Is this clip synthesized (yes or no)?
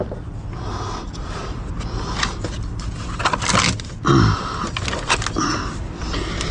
no